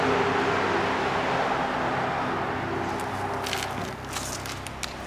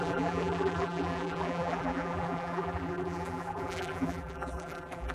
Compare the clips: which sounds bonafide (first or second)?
first